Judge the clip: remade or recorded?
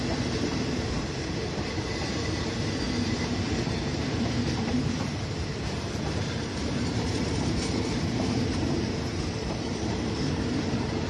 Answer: remade